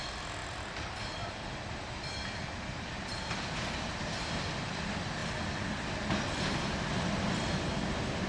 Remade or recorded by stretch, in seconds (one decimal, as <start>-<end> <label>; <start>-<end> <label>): 0.0-8.3 recorded